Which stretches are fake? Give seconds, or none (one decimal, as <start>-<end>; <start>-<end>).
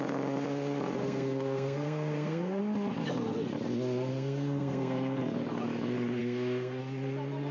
1.0-2.6; 4.1-5.2; 6.2-6.8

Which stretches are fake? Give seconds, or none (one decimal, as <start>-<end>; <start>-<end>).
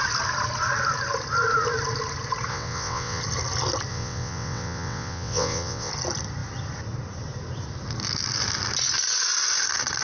2.5-3.2; 3.9-5.9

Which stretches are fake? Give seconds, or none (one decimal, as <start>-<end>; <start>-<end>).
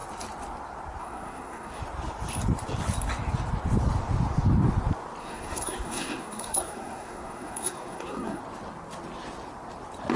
1.0-1.8; 5.2-8.4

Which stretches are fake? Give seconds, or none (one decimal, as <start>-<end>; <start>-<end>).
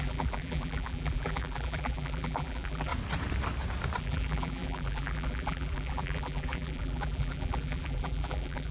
0.0-2.9; 4.0-8.7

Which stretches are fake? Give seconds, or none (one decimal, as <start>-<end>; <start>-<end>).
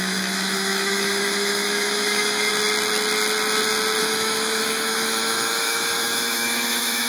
0.0-2.5; 4.0-7.1